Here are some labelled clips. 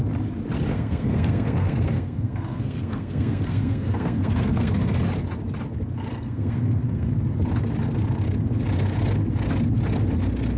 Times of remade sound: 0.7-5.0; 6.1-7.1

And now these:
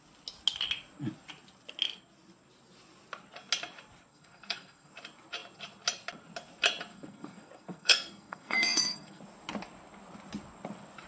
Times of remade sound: 4.1-4.9; 6.9-9.2